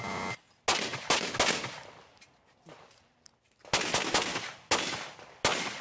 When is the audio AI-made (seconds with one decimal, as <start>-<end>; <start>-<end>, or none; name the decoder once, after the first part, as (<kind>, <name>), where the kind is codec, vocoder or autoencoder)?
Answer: none